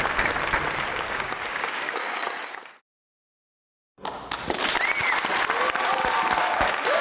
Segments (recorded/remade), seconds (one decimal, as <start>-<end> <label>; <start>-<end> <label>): 0.0-0.9 recorded; 0.9-2.5 remade; 2.5-6.4 recorded; 6.4-7.0 remade